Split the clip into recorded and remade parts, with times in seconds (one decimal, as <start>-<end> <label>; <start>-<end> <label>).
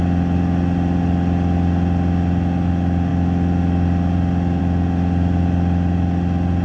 0.0-6.6 recorded